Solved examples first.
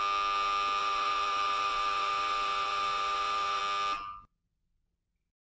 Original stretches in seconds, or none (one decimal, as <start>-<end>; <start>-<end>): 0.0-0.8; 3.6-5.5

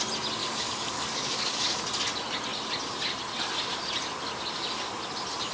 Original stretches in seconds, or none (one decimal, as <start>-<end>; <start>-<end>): 0.0-0.4; 1.8-5.5

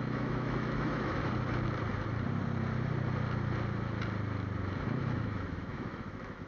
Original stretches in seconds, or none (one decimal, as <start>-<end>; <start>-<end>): 1.2-4.8

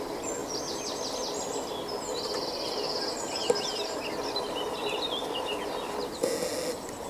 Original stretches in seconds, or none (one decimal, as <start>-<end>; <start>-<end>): 0.0-7.1